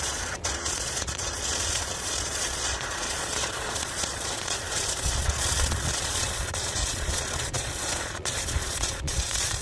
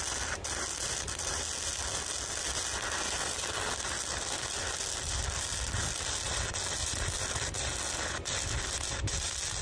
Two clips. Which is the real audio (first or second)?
second